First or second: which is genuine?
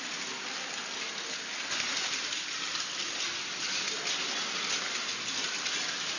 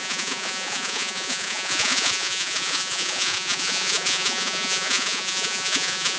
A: first